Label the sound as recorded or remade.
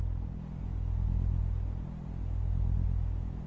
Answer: recorded